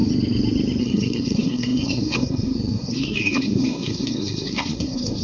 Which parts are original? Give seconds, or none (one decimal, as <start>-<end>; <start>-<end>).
0.0-0.8